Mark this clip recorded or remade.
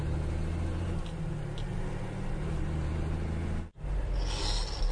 recorded